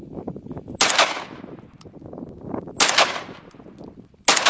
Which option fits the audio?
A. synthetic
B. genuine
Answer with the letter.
B